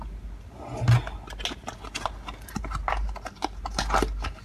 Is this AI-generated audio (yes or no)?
no